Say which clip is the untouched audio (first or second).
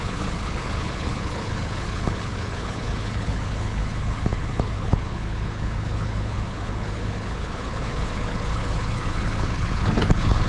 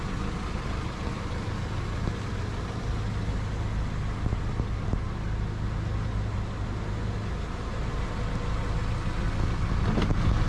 second